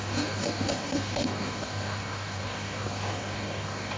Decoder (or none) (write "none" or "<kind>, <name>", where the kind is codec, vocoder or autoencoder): codec, DAC